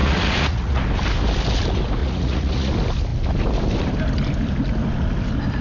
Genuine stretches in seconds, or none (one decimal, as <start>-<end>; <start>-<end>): 0.8-2.0; 2.7-5.6